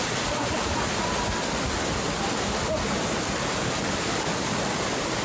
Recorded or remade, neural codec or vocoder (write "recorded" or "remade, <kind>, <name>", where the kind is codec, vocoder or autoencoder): recorded